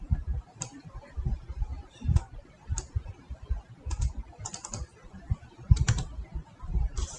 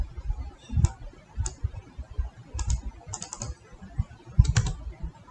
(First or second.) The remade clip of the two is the first